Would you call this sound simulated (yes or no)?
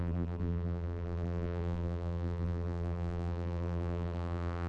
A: yes